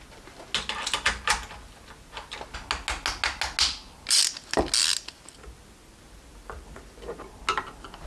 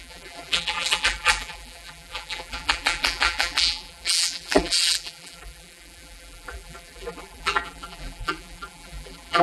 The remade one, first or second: second